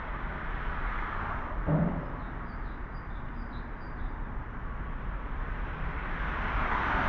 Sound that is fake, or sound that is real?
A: fake